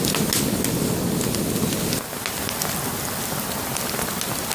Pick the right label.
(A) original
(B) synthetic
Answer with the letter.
A